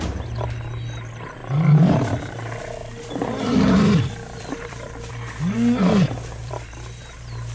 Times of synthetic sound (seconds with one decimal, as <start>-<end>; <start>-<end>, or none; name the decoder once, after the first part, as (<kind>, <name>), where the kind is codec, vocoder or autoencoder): 2.8-5.1 (vocoder, BigVGAN v2); 6.4-7.0